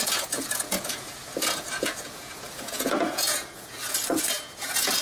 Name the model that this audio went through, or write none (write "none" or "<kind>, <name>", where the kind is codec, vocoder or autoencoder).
vocoder, Vocos